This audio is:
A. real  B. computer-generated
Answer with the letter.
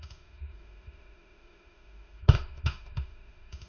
B